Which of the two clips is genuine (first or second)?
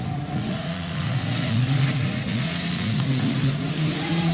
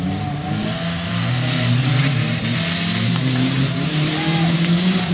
second